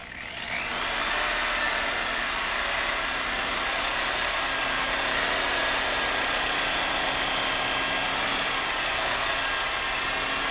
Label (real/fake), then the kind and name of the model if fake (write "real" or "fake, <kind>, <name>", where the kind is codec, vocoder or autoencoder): real